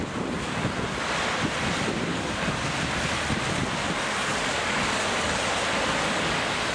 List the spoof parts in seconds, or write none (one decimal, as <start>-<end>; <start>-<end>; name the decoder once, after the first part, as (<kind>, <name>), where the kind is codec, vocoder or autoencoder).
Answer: 2.1-2.7 (codec, DAC); 4.2-5.4